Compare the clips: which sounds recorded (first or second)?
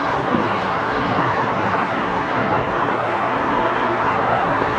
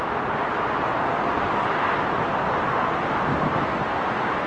second